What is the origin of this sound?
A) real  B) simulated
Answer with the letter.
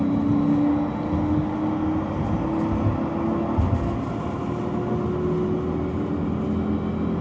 A